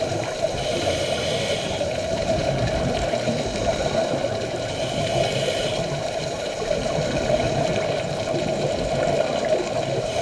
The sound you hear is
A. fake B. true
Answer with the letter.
A